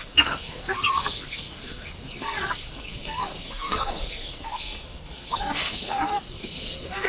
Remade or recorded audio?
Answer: remade